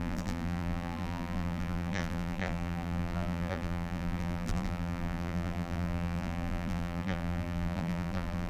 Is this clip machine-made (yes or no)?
yes